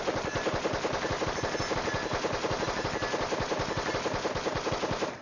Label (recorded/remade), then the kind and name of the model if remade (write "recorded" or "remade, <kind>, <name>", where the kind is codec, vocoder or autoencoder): recorded